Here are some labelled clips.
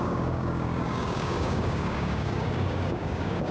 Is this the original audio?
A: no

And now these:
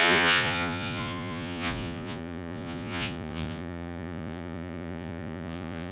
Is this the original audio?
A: no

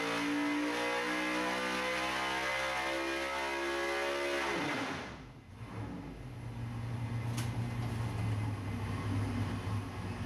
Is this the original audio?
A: yes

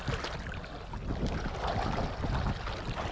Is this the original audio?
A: yes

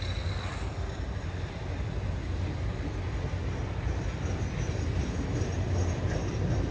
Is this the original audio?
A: yes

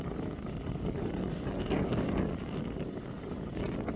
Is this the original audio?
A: yes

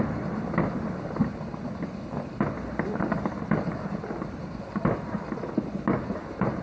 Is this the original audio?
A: yes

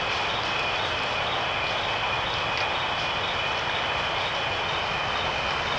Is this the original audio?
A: yes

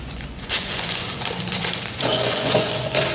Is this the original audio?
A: no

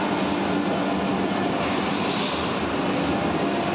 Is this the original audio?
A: yes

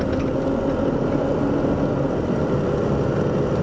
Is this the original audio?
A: yes